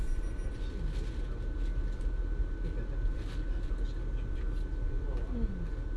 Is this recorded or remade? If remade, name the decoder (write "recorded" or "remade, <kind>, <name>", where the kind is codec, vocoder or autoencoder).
recorded